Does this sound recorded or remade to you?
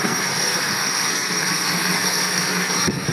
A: remade